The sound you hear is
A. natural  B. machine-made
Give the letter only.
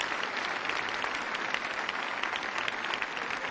A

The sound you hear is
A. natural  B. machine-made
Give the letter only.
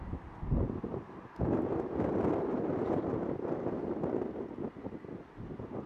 A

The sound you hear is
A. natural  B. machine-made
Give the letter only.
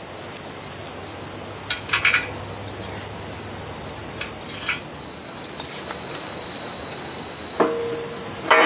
A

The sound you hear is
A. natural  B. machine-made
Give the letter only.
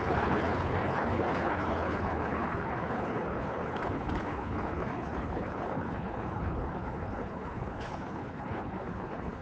B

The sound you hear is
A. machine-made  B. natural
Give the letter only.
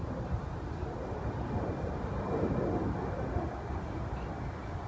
B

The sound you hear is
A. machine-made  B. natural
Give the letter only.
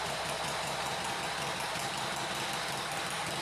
B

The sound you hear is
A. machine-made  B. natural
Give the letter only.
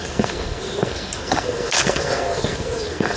A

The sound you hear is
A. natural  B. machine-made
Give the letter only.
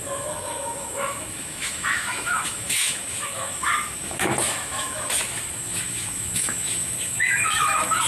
B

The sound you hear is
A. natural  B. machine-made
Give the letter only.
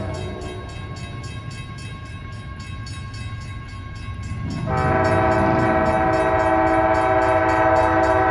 A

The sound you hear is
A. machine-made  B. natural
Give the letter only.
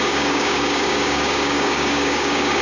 A